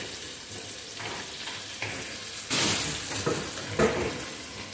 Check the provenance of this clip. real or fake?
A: real